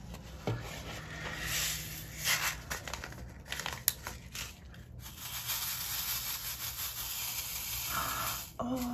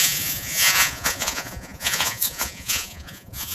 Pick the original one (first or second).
first